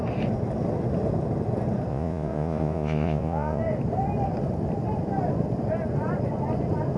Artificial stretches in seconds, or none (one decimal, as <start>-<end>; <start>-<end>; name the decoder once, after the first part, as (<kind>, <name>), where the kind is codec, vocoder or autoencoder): 1.9-3.6 (vocoder, Vocos)